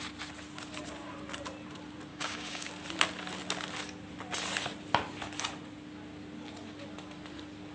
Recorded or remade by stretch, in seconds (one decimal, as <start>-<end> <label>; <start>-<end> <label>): 0.0-2.1 recorded; 2.1-2.7 remade; 2.7-7.7 recorded